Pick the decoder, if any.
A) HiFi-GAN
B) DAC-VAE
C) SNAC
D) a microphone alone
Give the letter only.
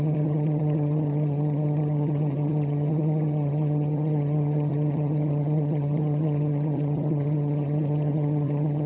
A